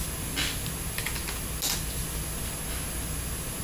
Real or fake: real